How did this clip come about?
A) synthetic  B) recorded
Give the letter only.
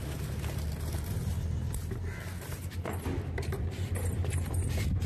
B